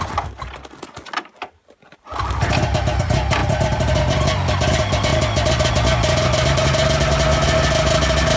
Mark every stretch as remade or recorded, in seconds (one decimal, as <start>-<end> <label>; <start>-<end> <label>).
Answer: 0.0-8.4 recorded